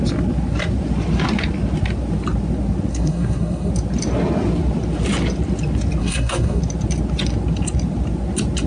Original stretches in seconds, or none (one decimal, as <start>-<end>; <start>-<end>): 0.0-2.9; 3.7-6.0; 6.6-8.7